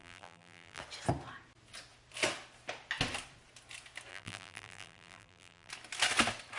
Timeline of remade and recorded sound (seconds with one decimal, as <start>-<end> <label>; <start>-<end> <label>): 0.0-0.8 remade; 0.8-4.1 recorded; 4.1-5.7 remade; 5.7-6.6 recorded